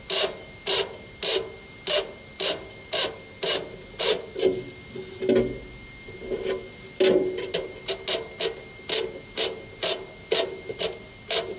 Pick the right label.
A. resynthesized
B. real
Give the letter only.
B